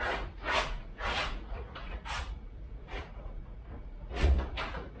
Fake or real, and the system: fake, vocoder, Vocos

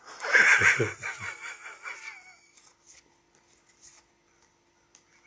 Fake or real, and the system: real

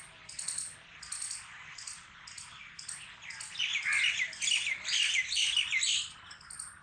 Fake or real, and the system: real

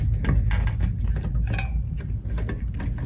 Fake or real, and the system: real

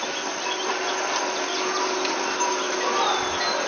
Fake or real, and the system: real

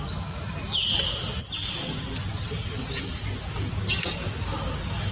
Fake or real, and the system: real